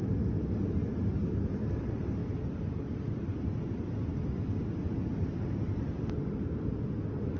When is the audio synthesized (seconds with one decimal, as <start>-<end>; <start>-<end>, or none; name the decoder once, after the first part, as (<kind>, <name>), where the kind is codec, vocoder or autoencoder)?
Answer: 0.8-1.7 (vocoder, BigVGAN v2)